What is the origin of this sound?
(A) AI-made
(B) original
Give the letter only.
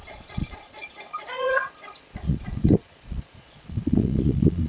A